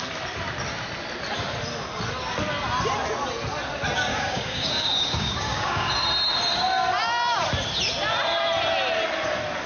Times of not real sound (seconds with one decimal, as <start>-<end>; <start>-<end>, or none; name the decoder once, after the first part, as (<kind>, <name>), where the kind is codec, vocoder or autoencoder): 4.1-5.9 (codec, DAC)